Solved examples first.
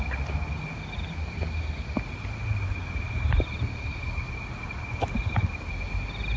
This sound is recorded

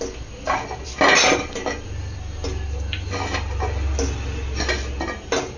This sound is recorded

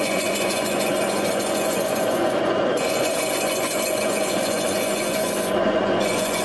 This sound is remade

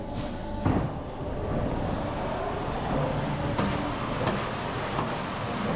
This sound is recorded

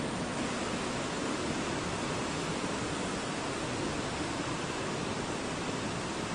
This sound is recorded